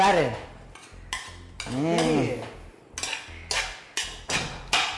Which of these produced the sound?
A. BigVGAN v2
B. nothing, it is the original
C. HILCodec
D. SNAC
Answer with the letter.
B